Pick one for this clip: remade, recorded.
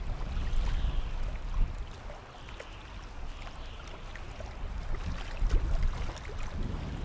recorded